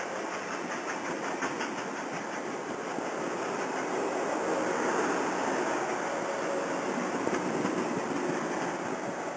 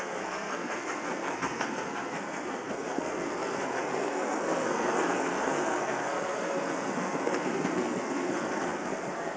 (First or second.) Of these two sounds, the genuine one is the first